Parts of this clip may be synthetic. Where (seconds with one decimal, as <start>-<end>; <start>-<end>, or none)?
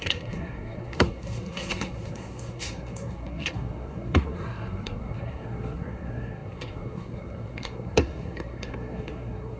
0.0-9.6